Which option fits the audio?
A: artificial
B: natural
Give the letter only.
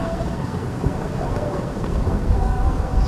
A